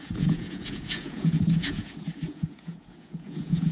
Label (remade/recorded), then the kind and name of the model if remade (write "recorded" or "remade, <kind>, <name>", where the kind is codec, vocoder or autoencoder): remade, vocoder, Vocos